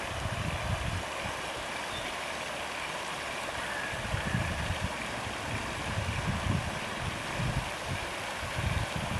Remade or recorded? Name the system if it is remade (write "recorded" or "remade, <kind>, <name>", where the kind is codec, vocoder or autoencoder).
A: recorded